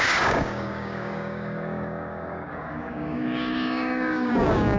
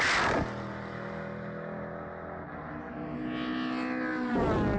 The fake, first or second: first